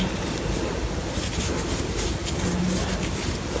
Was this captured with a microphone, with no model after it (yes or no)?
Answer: yes